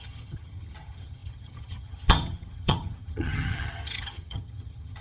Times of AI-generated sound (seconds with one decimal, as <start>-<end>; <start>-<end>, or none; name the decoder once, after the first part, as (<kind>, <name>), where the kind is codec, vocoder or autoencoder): 0.0-5.0 (vocoder, HiFi-GAN)